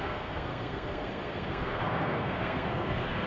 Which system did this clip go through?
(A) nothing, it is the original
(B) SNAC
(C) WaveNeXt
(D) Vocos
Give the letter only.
B